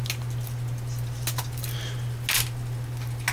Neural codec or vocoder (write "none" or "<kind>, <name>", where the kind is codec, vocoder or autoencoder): none